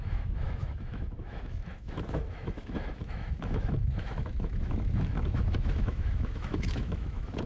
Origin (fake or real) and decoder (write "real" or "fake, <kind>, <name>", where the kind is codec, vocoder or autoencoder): fake, autoencoder, DAC-VAE